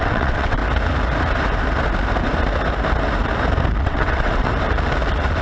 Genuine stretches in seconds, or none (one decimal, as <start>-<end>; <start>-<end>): 0.6-3.8; 4.5-5.4